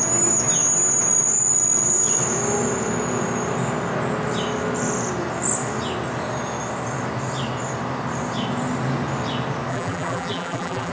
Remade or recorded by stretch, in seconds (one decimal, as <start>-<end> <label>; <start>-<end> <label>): 0.0-9.7 recorded; 9.7-10.9 remade